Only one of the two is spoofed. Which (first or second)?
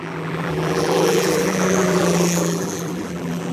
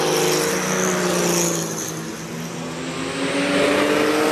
first